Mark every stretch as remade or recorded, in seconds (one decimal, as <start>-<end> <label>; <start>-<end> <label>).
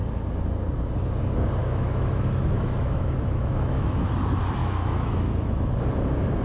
0.0-1.6 recorded; 1.6-4.1 remade; 4.1-4.6 recorded; 4.6-5.7 remade; 5.7-6.4 recorded